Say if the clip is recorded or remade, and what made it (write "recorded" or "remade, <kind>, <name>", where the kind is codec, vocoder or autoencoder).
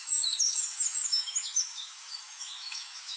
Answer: remade, autoencoder, DAC-VAE